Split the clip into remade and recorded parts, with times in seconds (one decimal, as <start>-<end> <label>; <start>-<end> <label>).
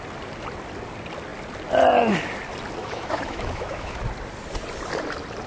0.0-2.8 recorded; 2.8-4.0 remade; 4.0-5.5 recorded